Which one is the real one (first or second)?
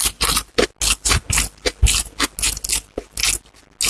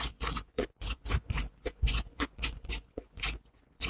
first